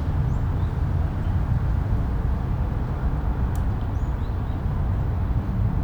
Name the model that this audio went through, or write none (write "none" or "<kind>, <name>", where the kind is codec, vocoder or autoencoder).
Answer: none